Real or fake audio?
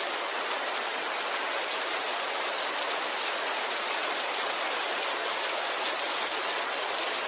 real